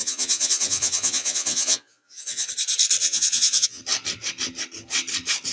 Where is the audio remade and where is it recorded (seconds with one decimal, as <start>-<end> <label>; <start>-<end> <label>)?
0.0-2.5 remade; 2.5-3.0 recorded; 3.0-3.8 remade; 3.8-5.5 recorded

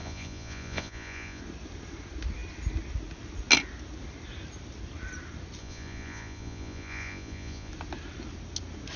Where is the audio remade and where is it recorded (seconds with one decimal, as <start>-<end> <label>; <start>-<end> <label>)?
0.0-1.4 remade; 1.4-5.6 recorded; 5.6-7.7 remade; 7.7-9.0 recorded

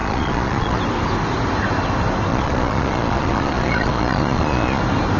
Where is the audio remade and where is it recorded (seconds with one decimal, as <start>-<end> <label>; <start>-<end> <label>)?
0.0-0.8 remade; 0.8-2.3 recorded; 2.3-4.8 remade; 4.8-5.2 recorded

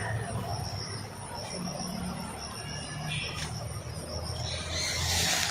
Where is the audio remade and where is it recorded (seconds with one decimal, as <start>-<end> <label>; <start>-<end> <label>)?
0.0-5.5 recorded

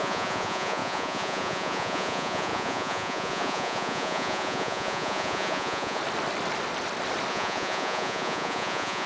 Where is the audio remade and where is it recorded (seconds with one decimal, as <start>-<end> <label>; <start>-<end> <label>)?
0.0-6.0 remade; 6.0-7.3 recorded; 7.3-9.1 remade

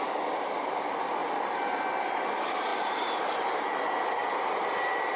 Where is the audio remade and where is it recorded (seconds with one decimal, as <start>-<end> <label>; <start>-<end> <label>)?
0.0-5.2 recorded